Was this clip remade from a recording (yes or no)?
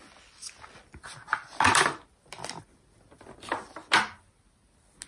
no